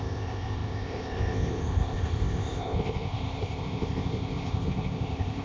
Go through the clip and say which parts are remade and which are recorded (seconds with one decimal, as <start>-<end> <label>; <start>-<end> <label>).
0.0-5.4 remade